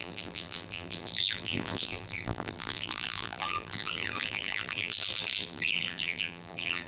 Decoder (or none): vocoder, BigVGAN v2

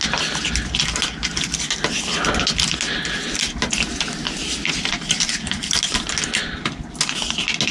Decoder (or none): none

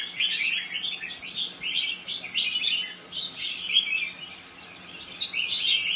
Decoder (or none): none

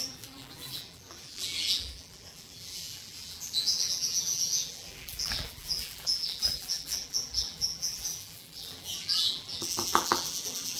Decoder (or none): vocoder, BigVGAN v2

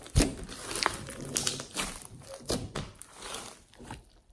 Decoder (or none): vocoder, BigVGAN v2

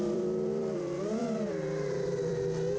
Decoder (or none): vocoder, BigVGAN v2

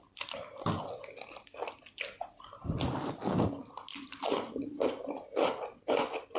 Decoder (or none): none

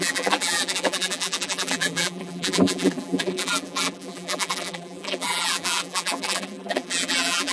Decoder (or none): vocoder, BigVGAN v2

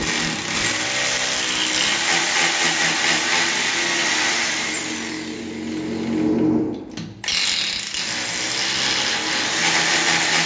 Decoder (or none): none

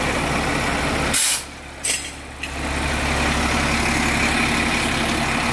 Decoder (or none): none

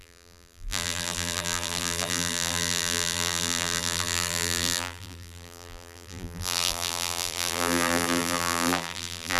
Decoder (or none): vocoder, BigVGAN v2